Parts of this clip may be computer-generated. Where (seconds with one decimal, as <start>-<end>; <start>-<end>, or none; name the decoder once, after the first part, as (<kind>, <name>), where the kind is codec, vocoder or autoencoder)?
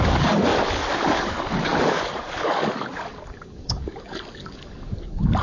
0.0-0.5 (codec, DAC); 1.1-5.4